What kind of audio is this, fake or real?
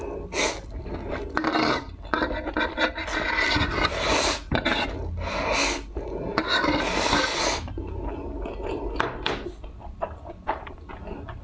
real